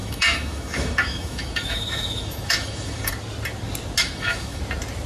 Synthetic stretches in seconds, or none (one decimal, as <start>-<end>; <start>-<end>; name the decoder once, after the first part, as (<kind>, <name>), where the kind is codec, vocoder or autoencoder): 0.0-3.1 (autoencoder, DAC-VAE); 4.0-4.6